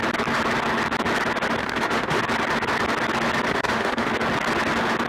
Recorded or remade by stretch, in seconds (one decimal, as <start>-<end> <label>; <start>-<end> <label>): 0.0-1.6 recorded; 1.6-2.2 remade; 2.2-3.5 recorded; 3.5-4.1 remade; 4.1-5.1 recorded

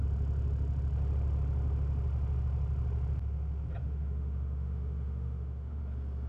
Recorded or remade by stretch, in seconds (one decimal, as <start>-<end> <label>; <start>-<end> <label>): 0.0-3.8 recorded; 3.8-5.8 remade; 5.8-6.3 recorded

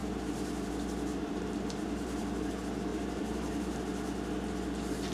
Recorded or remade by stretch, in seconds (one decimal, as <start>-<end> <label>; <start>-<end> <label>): 0.0-0.7 remade; 0.7-1.1 recorded; 1.1-2.5 remade; 2.5-2.9 recorded; 2.9-3.8 remade; 3.8-5.1 recorded

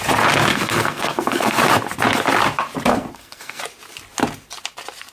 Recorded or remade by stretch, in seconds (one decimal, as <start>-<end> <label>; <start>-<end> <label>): 0.0-0.5 recorded; 0.5-1.6 remade; 1.6-2.9 recorded; 2.9-3.6 remade; 3.6-5.1 recorded